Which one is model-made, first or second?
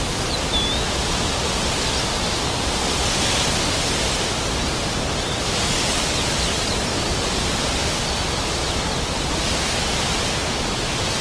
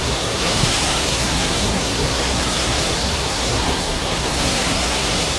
second